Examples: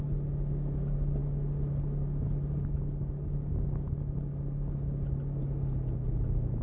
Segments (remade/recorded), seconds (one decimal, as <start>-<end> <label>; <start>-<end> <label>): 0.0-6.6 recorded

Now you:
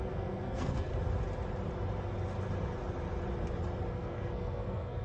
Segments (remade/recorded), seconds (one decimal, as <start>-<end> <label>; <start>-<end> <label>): 0.0-0.9 remade; 0.9-3.9 recorded; 3.9-5.0 remade

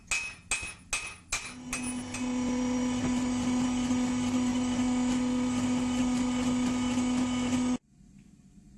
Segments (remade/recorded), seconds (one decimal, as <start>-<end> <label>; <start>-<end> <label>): 0.0-8.8 recorded

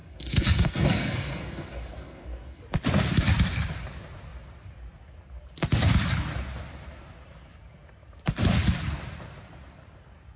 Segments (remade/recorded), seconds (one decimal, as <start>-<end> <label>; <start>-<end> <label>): 0.0-2.6 remade; 2.6-10.4 recorded